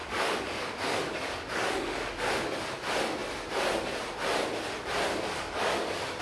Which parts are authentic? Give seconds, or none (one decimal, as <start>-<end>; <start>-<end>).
2.3-5.1